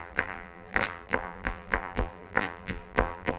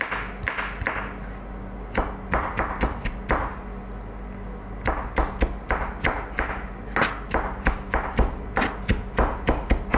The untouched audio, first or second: second